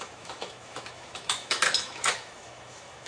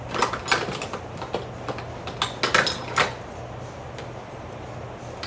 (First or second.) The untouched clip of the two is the second